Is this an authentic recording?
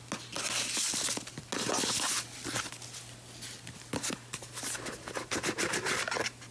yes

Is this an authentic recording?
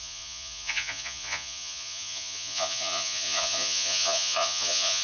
no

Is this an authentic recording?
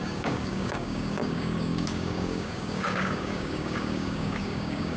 no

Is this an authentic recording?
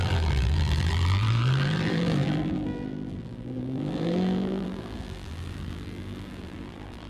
no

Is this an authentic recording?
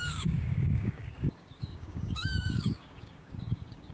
no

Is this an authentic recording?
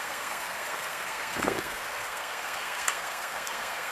no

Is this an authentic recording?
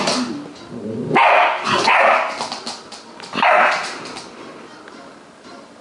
yes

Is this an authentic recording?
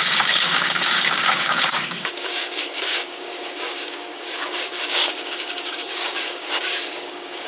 no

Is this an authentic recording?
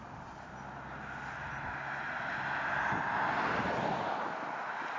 yes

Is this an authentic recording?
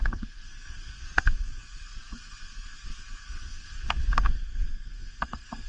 no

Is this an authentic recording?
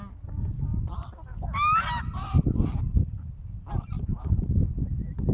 yes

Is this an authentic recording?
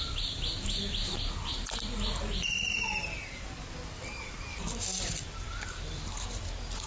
yes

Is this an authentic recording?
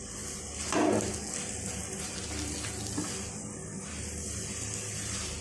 yes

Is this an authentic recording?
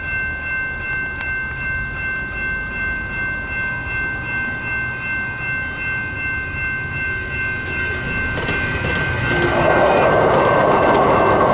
yes